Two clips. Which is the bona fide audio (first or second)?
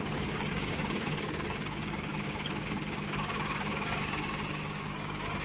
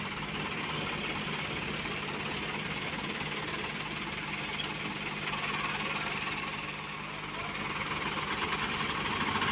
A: second